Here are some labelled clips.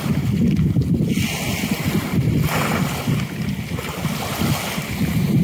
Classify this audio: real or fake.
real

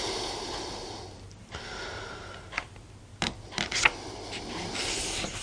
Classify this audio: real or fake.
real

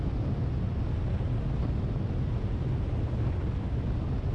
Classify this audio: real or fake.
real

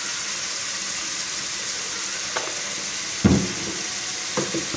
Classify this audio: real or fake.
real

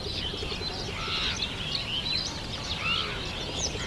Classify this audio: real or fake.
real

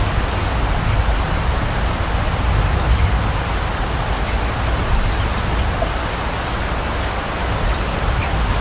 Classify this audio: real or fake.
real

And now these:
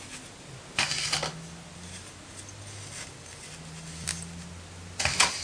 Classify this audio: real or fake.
real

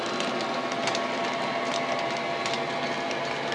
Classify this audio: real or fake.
real